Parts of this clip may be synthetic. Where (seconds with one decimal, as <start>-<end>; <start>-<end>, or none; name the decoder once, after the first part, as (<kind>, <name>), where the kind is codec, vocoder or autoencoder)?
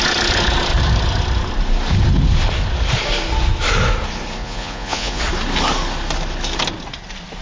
4.4-5.2 (vocoder, Vocos)